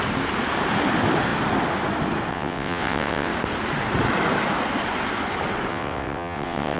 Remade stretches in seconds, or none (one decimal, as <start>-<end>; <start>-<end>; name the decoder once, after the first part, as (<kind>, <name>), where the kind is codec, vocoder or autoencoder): 2.3-3.3 (vocoder, WaveNeXt); 5.7-6.8